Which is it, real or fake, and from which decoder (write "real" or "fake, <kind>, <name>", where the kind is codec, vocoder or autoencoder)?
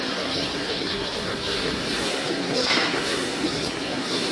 fake, codec, SNAC